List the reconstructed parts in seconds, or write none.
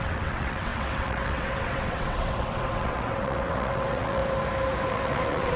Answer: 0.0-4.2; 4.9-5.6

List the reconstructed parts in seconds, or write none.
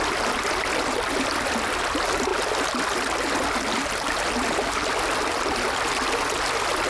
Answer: none